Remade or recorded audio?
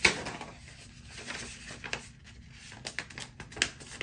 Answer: recorded